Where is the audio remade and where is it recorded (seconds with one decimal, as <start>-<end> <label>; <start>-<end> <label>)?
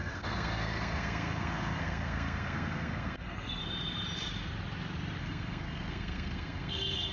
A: 0.0-3.6 remade; 3.6-5.2 recorded; 5.2-7.1 remade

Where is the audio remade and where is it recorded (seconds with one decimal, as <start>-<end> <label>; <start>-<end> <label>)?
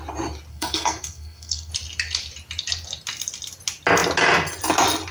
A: 0.0-0.5 recorded; 0.5-1.7 remade; 1.7-5.1 recorded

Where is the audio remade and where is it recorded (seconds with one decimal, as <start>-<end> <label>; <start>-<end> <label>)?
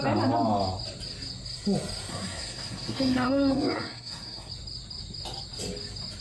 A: 0.0-2.1 recorded; 2.1-4.5 remade; 4.5-6.2 recorded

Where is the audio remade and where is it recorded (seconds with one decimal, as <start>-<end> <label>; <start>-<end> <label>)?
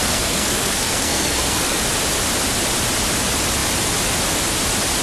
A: 0.0-1.8 remade; 1.8-5.0 recorded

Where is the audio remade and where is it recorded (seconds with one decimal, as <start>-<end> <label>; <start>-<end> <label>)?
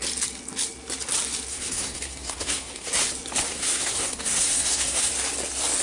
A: 0.0-1.5 recorded; 1.5-2.9 remade; 2.9-3.5 recorded; 3.5-5.1 remade; 5.1-5.8 recorded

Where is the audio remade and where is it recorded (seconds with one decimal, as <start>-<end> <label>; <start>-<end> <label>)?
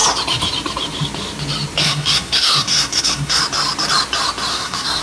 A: 0.0-1.8 recorded; 1.8-3.4 remade; 3.4-4.5 recorded; 4.5-5.0 remade